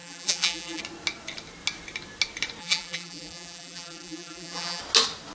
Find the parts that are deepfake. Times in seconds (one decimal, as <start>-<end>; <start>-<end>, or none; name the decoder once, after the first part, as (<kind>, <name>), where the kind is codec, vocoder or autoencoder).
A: 0.0-0.8 (vocoder, BigVGAN v2); 2.6-4.8